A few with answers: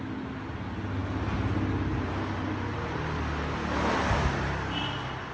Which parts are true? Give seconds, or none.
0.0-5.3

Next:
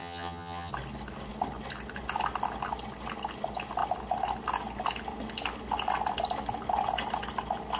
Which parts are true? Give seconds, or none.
0.7-7.8

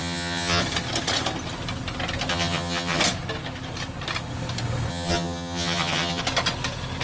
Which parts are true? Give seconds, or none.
0.6-2.3; 3.0-4.9; 6.2-7.0

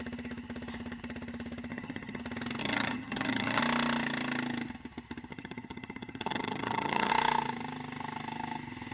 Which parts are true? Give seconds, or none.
0.0-1.7; 2.2-2.6; 3.6-5.3; 7.1-8.9

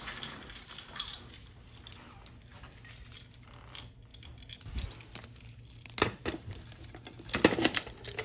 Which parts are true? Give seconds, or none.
0.0-8.2

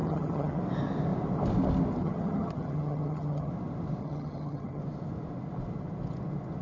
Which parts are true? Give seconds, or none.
0.6-2.0; 3.5-4.0; 4.8-6.6

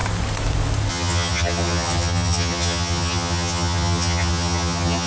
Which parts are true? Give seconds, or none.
0.0-0.9

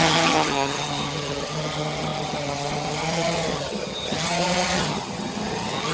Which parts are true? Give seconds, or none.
none